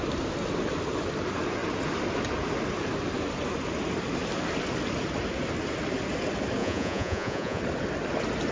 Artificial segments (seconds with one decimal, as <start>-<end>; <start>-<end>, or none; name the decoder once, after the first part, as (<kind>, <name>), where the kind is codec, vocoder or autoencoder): 6.6-7.6 (vocoder, Vocos)